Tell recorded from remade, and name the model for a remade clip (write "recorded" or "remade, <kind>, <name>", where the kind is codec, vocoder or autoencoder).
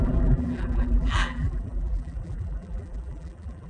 remade, vocoder, BigVGAN v2